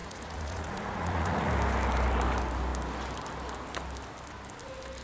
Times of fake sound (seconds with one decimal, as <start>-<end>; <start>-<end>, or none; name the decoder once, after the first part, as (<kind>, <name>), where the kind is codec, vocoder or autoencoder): 0.0-1.5 (vocoder, Vocos)